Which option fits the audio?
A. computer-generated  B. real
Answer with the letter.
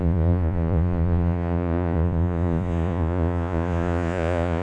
A